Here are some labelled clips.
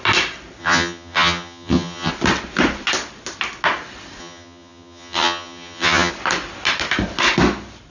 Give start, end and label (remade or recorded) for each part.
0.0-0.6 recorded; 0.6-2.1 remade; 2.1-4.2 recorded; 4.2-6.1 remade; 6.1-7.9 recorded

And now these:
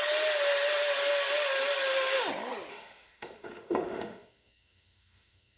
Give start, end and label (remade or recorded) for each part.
0.0-2.7 recorded; 2.7-5.6 remade

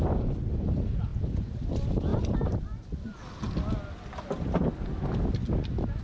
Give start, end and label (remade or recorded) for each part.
0.0-1.1 recorded; 1.1-1.7 remade; 1.7-6.0 recorded